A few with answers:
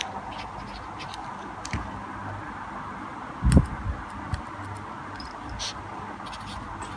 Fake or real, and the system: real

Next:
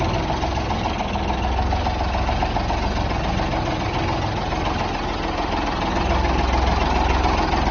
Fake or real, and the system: real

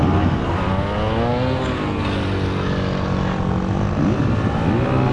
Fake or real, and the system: real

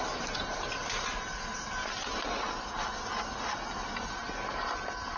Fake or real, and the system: real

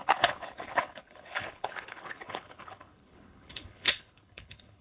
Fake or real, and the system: fake, codec, HILCodec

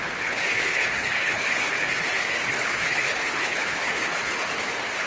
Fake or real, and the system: fake, codec, HILCodec